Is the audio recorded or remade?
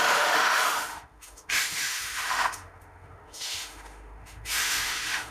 remade